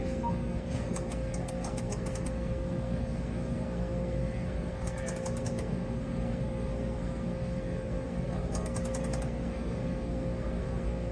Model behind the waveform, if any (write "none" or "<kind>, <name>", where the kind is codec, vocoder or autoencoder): codec, SNAC